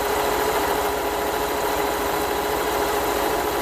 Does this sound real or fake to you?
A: fake